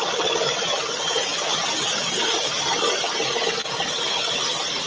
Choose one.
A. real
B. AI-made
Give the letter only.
A